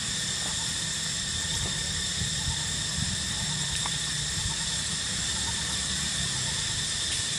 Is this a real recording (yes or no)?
yes